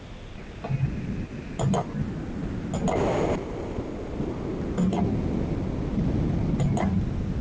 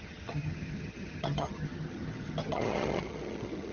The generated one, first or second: second